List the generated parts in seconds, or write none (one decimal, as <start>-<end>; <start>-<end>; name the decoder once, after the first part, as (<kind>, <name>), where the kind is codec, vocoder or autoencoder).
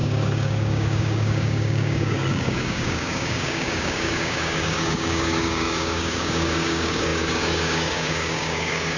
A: 0.0-9.0 (codec, DAC)